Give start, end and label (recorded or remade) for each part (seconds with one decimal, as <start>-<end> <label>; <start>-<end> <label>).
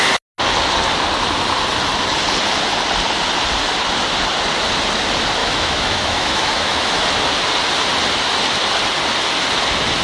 0.0-5.4 recorded; 5.4-7.0 remade; 7.0-10.0 recorded